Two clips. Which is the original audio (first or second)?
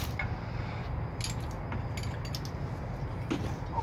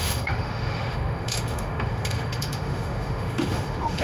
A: first